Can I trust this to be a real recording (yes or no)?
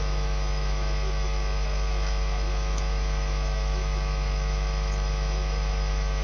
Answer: no